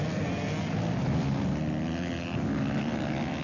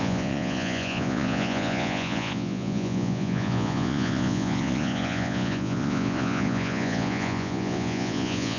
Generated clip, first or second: second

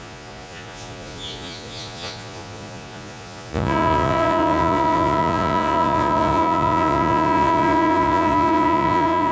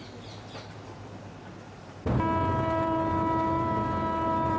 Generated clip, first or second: first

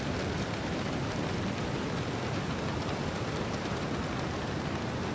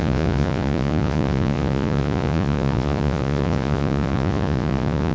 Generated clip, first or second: second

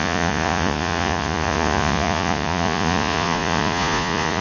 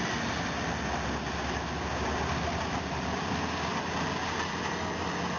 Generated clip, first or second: first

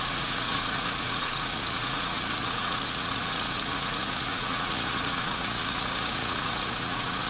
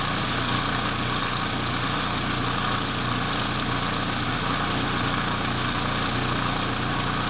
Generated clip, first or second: first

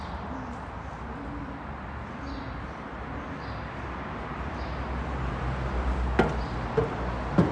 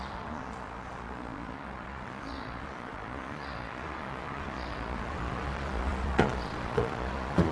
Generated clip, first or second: second